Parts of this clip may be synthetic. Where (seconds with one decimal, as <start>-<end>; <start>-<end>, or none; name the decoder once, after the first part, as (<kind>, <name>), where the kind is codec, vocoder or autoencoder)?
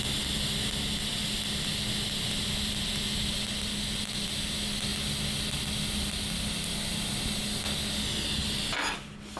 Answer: none